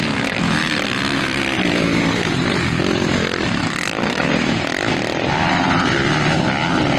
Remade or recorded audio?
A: remade